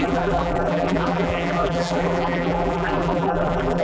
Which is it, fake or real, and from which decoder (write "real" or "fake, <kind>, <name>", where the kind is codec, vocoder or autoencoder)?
fake, vocoder, BigVGAN v2